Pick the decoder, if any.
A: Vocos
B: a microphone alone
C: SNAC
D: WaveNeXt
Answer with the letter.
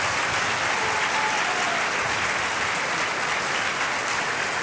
B